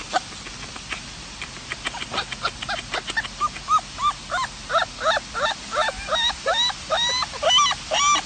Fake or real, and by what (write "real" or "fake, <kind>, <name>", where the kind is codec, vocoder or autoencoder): real